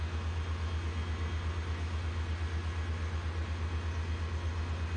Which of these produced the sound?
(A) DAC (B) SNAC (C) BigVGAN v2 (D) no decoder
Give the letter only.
D